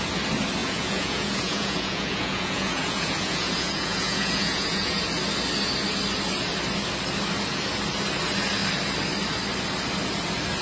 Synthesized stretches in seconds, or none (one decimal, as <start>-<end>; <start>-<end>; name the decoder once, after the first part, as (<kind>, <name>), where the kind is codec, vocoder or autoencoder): 0.6-5.0 (vocoder, Vocos)